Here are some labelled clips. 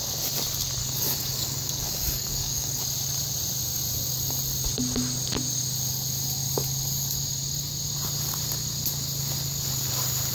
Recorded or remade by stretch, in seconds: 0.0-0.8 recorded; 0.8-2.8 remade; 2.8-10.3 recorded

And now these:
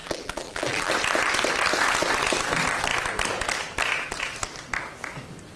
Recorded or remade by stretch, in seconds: 0.0-0.9 remade; 0.9-5.6 recorded

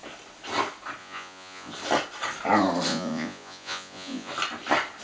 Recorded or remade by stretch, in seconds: 0.0-1.0 recorded; 1.0-1.7 remade; 1.7-2.9 recorded; 2.9-4.3 remade; 4.3-5.0 recorded

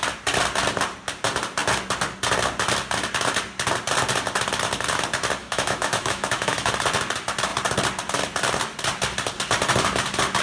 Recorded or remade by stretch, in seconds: 0.0-5.4 recorded; 5.4-6.7 remade; 6.7-10.4 recorded

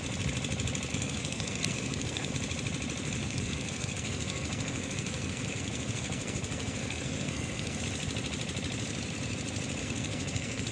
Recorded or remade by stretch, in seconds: 0.0-0.9 recorded; 0.9-2.3 remade; 2.3-3.2 recorded; 3.2-7.8 remade; 7.8-9.8 recorded; 9.8-10.7 remade

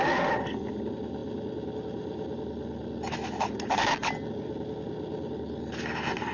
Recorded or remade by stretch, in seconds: 0.0-6.3 recorded

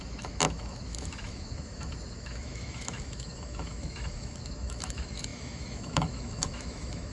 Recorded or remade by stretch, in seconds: 0.0-7.1 remade

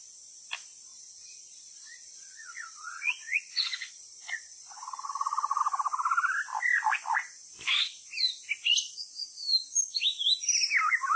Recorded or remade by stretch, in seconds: 0.0-0.9 recorded; 0.9-5.6 remade; 5.6-11.2 recorded